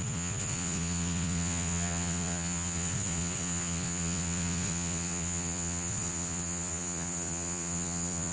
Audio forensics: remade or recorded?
remade